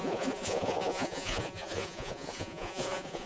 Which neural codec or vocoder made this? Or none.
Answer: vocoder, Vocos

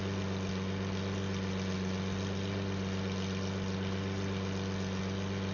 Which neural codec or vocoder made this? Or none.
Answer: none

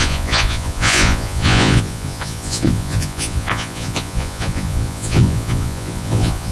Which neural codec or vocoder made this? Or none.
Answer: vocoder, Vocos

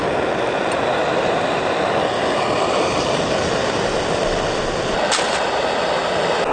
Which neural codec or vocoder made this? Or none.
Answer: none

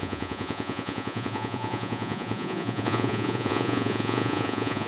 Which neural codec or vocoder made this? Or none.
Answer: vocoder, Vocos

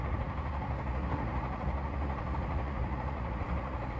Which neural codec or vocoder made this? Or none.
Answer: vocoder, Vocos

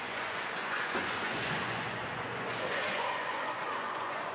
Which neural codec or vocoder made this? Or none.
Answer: vocoder, Vocos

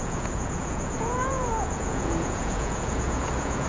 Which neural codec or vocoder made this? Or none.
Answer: vocoder, Vocos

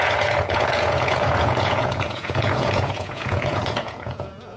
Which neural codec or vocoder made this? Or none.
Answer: vocoder, Vocos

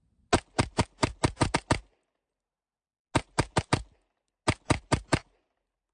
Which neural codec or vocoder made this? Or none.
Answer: none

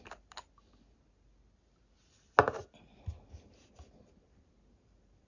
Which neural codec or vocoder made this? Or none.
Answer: none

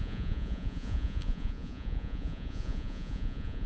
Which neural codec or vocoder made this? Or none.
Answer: vocoder, Vocos